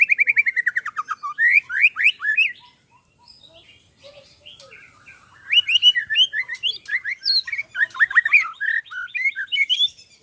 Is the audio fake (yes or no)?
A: no